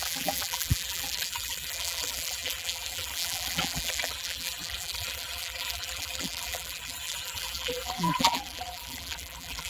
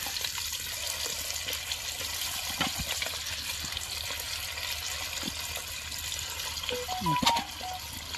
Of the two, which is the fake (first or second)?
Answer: first